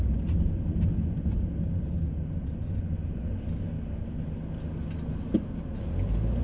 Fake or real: real